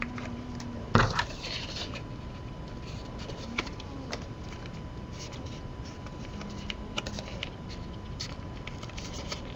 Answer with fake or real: real